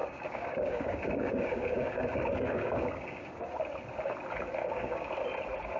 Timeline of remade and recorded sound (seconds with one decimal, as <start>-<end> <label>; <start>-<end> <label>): 0.0-3.5 remade; 3.5-4.6 recorded; 4.6-5.1 remade; 5.1-5.8 recorded